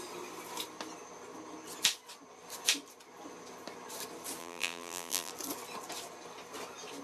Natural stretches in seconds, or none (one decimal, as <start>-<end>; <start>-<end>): 0.0-4.4; 5.3-7.0